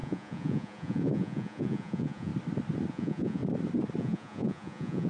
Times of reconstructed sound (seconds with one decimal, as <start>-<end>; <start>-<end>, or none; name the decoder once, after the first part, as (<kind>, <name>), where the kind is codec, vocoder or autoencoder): 0.0-2.3 (vocoder, Vocos); 2.9-3.4; 4.0-5.1